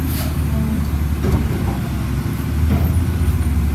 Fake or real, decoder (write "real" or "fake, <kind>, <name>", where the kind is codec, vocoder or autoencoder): real